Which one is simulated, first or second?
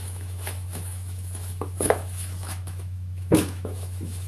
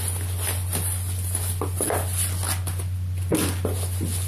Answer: first